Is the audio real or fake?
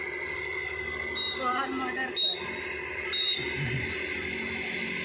real